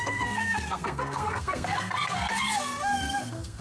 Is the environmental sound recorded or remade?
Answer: remade